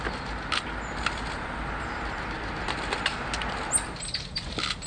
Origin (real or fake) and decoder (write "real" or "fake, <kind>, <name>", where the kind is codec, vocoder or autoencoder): real